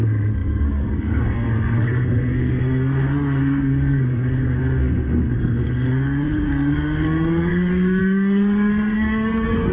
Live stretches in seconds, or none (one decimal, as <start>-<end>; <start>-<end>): none